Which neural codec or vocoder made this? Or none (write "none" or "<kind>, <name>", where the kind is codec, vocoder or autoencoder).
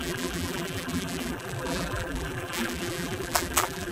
vocoder, BigVGAN v2